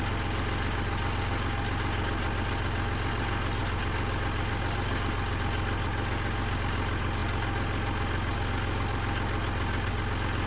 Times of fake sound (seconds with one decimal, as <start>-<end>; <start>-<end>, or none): none